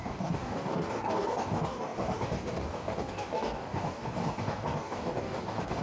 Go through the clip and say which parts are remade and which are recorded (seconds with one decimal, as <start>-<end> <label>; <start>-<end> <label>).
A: 0.0-5.8 remade